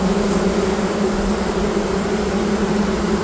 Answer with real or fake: real